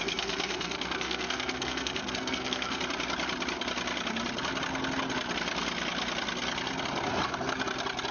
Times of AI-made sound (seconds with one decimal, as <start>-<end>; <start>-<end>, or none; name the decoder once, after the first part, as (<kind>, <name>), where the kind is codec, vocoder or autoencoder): 0.0-2.8 (codec, SNAC)